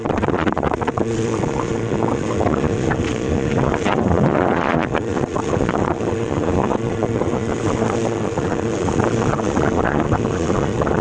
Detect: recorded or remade remade